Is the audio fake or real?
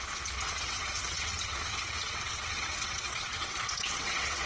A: fake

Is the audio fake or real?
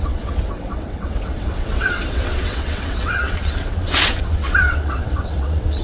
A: fake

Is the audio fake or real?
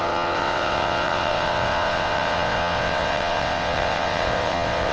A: fake